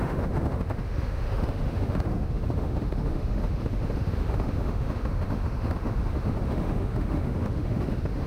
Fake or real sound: fake